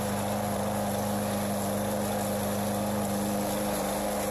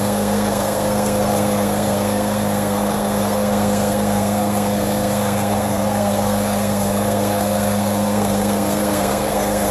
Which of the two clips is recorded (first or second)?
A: first